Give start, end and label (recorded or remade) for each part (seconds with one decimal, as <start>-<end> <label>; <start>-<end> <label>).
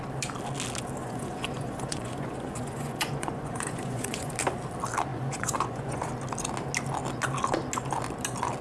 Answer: 0.0-1.0 recorded; 1.0-4.3 remade; 4.3-5.1 recorded; 5.1-6.1 remade; 6.1-8.6 recorded